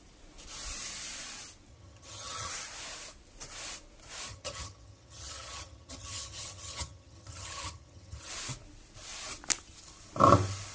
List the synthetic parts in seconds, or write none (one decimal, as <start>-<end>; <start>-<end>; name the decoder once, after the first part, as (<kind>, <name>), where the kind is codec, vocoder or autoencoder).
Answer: 1.7-2.5 (vocoder, HiFi-GAN); 4.3-8.3